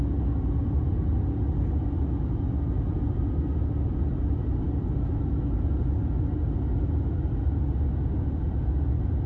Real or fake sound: real